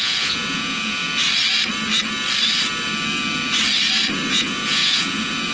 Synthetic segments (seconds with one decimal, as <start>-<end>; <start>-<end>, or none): 0.0-1.0; 4.3-5.5